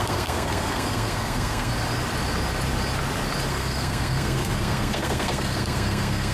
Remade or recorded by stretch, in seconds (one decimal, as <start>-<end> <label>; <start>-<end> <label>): 0.0-1.7 remade; 1.7-3.5 recorded; 3.5-6.3 remade